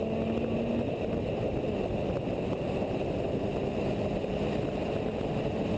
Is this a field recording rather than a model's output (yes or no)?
yes